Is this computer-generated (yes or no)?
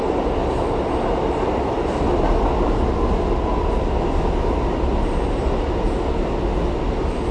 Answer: no